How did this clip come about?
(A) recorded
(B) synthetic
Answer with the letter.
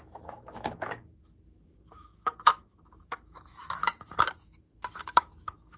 B